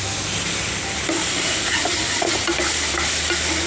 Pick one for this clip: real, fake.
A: real